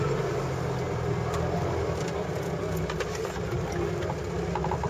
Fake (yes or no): no